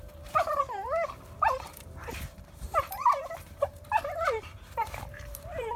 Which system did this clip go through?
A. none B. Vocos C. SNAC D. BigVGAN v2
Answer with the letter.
D